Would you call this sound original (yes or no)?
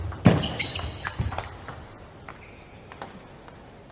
yes